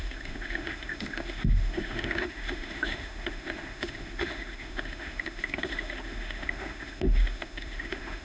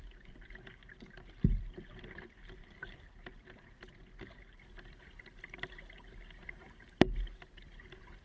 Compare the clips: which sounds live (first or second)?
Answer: second